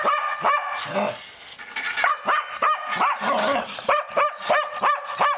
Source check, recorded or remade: recorded